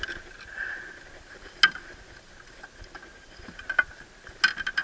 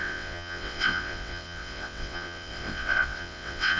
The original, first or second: first